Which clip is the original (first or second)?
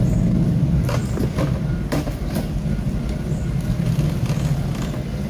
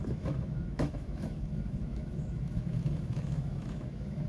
first